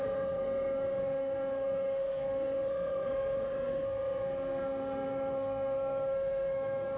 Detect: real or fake fake